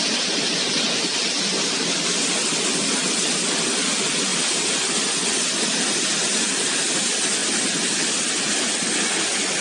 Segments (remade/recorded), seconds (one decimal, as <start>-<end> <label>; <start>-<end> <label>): 0.0-9.6 recorded